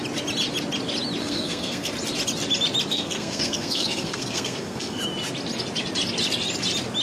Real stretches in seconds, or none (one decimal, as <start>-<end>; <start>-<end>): 0.0-1.2; 1.9-2.9; 5.0-7.0